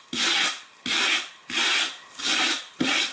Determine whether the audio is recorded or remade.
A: recorded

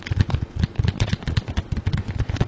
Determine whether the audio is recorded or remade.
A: remade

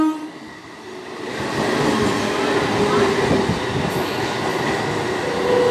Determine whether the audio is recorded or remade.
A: recorded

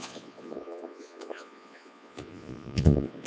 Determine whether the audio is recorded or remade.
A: remade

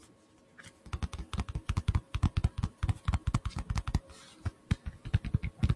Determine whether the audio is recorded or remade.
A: recorded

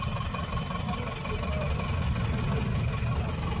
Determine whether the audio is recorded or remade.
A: recorded